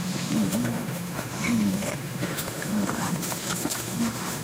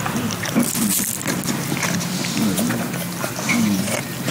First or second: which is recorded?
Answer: second